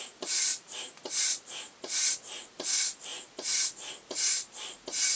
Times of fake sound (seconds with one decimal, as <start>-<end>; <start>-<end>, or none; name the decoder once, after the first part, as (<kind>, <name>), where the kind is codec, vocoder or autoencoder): none